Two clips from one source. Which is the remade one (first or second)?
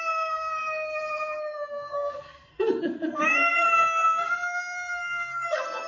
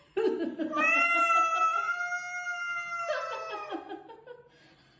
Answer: first